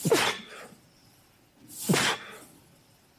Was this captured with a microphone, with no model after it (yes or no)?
yes